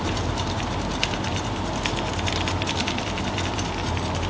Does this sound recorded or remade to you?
recorded